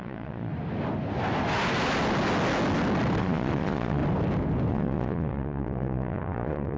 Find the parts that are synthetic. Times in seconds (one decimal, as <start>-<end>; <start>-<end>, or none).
0.0-0.5; 3.2-4.0; 4.7-6.8